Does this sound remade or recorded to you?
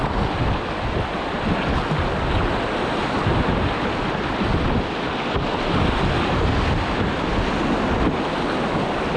recorded